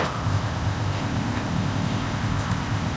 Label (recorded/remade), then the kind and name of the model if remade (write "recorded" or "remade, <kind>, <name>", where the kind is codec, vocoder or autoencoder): remade, codec, ZipCodec